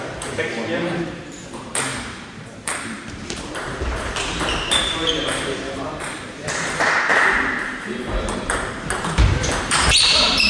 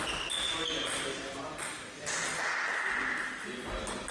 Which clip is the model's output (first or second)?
first